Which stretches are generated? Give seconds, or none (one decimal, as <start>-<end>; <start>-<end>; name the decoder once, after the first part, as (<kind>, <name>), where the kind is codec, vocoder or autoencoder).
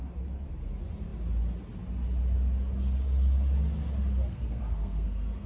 4.3-5.5 (codec, SNAC)